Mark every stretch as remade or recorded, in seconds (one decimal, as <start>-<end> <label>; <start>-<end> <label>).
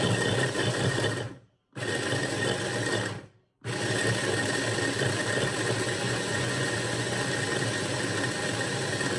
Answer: 0.0-6.0 recorded; 6.0-7.2 remade; 7.2-9.2 recorded